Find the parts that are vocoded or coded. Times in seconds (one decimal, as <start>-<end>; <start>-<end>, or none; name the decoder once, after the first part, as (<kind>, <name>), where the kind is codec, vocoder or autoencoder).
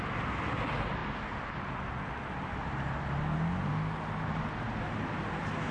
none